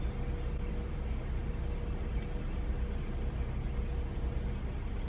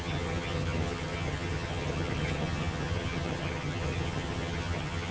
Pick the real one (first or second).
first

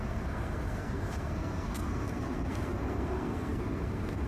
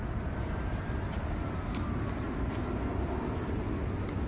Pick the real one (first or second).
second